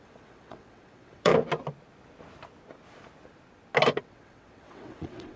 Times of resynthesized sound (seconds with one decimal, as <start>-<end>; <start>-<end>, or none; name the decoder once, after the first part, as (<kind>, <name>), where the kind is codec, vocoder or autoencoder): 0.0-1.3 (vocoder, WaveNeXt); 4.0-5.4